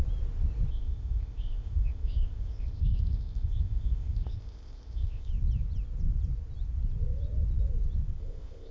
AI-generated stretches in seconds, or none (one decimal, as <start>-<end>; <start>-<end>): 0.7-5.3; 8.2-8.7